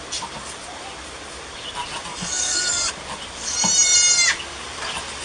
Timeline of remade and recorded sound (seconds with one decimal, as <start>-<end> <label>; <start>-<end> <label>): 0.0-2.1 recorded; 2.1-2.9 remade; 2.9-5.2 recorded